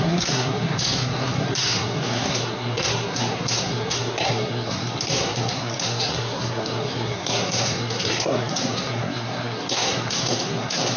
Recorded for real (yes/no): no